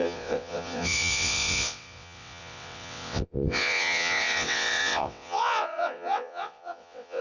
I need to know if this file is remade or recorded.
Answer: remade